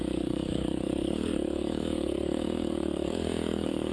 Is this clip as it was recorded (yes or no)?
no